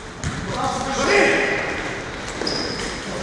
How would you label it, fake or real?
real